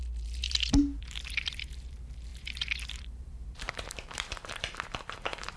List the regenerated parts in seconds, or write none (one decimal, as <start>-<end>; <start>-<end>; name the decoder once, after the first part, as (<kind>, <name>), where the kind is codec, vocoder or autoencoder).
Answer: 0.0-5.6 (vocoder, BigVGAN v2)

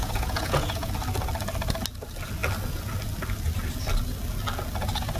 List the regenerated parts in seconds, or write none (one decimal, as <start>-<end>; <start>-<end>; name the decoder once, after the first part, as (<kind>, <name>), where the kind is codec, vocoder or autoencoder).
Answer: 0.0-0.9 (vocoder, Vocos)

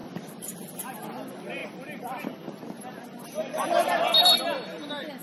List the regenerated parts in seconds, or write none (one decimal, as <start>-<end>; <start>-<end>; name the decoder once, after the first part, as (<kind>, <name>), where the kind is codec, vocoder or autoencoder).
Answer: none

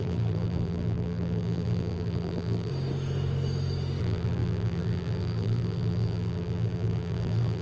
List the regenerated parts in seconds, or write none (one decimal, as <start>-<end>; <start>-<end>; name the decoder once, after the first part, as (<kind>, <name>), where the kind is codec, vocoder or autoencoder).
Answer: 0.0-2.7 (vocoder, BigVGAN v2); 4.0-7.6

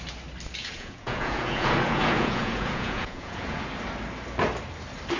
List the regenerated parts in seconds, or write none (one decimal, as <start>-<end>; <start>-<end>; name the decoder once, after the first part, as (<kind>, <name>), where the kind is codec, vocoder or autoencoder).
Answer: 0.6-3.6 (vocoder, Vocos)